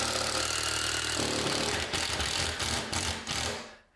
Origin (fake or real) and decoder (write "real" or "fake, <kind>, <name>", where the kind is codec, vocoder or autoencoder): real